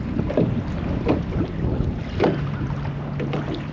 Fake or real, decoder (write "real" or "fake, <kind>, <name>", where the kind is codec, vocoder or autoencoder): real